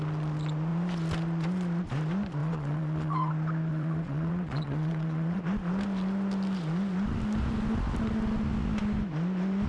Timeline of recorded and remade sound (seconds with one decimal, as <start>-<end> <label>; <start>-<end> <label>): 0.0-2.4 recorded; 2.4-3.3 remade; 3.3-3.7 recorded; 3.7-5.4 remade; 5.4-9.7 recorded